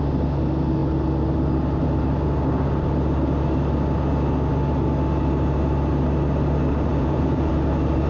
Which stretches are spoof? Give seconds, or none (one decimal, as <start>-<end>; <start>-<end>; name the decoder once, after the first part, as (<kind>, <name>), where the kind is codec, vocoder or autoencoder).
6.9-7.5 (vocoder, Vocos)